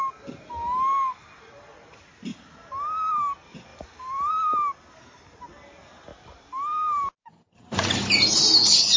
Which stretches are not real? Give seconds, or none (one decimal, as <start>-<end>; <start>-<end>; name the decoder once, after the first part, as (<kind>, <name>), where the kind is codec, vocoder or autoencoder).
3.7-4.3 (vocoder, BigVGAN v2)